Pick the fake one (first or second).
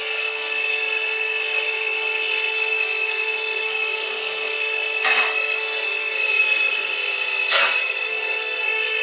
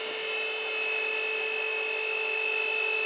first